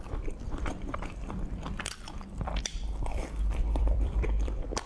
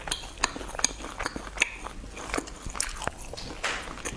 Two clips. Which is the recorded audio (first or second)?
second